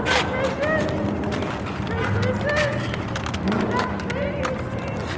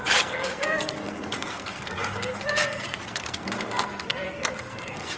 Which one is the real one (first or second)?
first